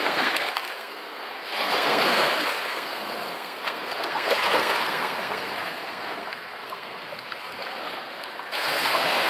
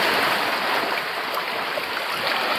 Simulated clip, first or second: first